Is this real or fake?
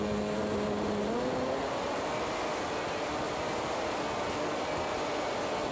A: real